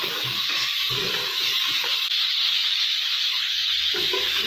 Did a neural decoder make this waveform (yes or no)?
yes